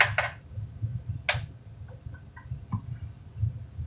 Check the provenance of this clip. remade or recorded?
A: recorded